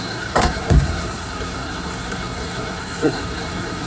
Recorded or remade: remade